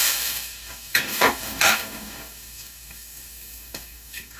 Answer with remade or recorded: remade